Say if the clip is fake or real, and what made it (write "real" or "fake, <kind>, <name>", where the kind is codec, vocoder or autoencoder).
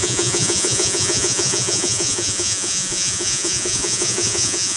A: fake, vocoder, Vocos